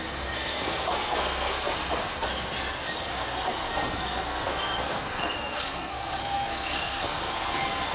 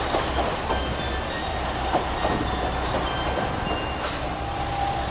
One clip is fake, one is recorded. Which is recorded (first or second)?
second